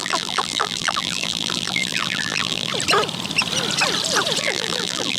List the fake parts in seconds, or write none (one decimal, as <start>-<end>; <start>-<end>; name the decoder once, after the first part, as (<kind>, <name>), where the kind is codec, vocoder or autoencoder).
0.0-2.7 (vocoder, BigVGAN v2); 4.4-5.2